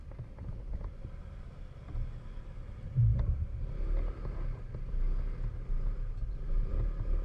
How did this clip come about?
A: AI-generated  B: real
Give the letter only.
B